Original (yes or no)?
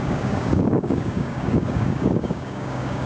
no